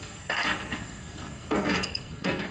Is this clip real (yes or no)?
no